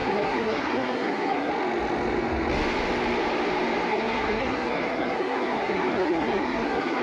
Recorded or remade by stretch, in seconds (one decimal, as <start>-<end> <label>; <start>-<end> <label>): 0.0-1.5 remade; 1.5-3.9 recorded; 3.9-7.0 remade